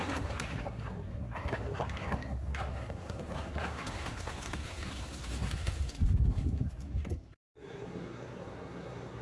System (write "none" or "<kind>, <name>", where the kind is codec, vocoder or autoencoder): codec, SNAC